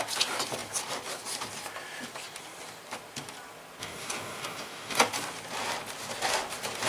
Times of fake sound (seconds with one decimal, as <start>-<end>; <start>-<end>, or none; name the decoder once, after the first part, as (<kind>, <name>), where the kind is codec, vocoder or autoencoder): 3.8-5.0 (codec, DAC)